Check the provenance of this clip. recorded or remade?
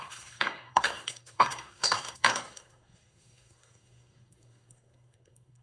remade